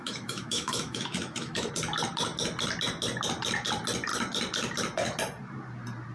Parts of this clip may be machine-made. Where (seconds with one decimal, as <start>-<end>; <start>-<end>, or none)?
0.0-1.7